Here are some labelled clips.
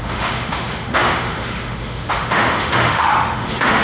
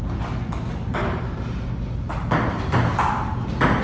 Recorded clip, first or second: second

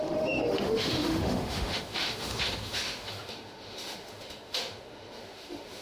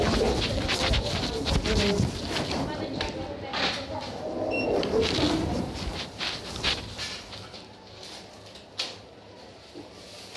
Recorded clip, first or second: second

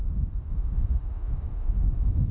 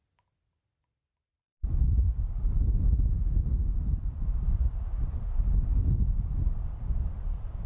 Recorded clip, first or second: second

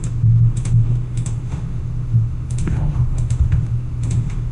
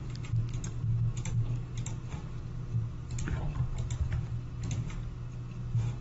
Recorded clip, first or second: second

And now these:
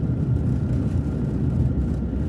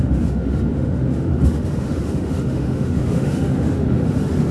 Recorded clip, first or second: first